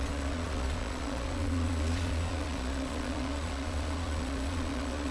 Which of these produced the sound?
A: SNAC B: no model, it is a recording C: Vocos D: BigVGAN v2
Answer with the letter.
C